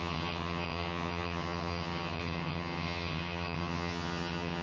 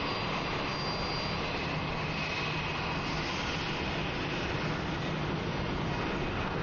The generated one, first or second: first